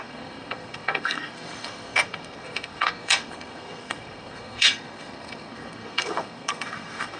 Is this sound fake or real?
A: fake